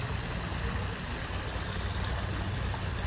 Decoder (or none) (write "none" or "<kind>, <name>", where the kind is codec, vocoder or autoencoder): none